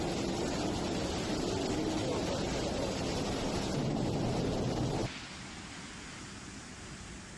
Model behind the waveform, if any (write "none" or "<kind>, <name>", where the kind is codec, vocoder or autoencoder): none